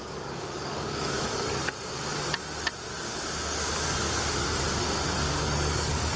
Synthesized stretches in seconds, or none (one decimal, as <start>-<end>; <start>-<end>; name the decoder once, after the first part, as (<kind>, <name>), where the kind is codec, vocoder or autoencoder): 0.0-1.6 (codec, DAC); 5.3-6.2